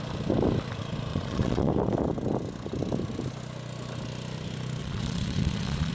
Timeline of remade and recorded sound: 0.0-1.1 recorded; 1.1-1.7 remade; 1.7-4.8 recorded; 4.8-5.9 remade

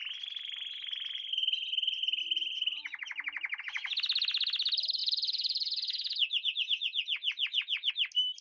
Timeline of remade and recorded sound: 0.0-5.0 recorded; 5.0-7.9 remade; 7.9-8.4 recorded

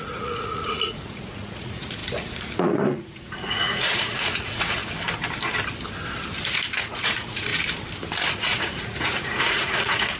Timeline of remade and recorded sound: 0.0-4.8 remade; 4.8-6.8 recorded; 6.8-7.5 remade; 7.5-8.3 recorded; 8.3-10.2 remade

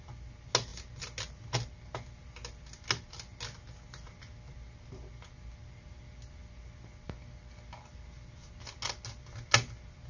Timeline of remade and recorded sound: 0.0-10.1 recorded

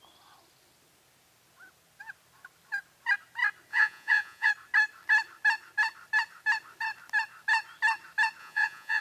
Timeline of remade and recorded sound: 0.0-3.7 recorded; 3.7-4.5 remade; 4.5-8.4 recorded; 8.4-9.0 remade

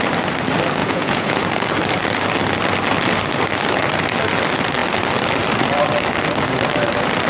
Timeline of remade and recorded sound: 0.0-0.8 recorded; 0.8-1.4 remade; 1.4-7.3 recorded

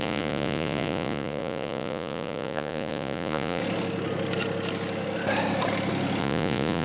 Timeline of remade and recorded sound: 0.0-3.6 remade; 3.6-6.2 recorded; 6.2-6.8 remade

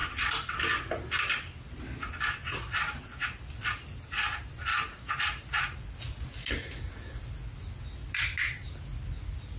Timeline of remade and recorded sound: 0.0-9.6 recorded